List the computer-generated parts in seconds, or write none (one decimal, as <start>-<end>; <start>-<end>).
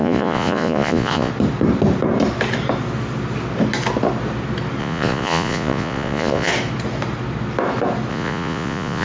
0.0-1.3; 4.8-6.5; 8.1-9.0